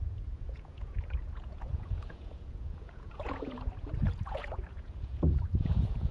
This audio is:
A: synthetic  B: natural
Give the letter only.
A